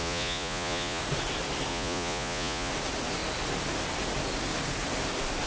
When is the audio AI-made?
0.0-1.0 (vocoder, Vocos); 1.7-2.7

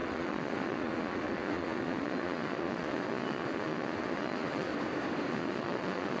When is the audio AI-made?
0.0-4.7 (vocoder, Vocos); 5.3-6.2

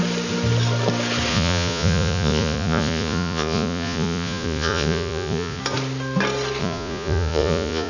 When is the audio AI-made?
1.3-5.6 (vocoder, Vocos); 6.6-7.9